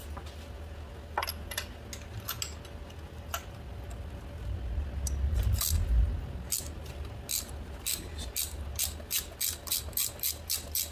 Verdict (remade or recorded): recorded